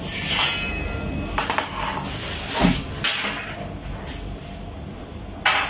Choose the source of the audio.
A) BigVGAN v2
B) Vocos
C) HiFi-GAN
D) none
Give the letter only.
D